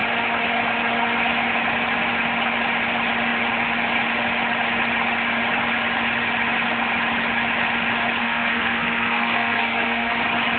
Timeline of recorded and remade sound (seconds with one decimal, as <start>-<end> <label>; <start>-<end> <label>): 0.0-8.2 recorded; 8.2-10.1 remade; 10.1-10.6 recorded